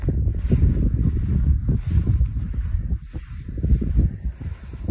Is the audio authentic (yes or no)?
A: yes